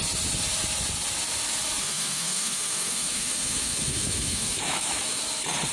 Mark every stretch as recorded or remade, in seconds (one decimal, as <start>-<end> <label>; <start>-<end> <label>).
0.0-1.8 recorded; 1.8-5.2 remade; 5.2-5.7 recorded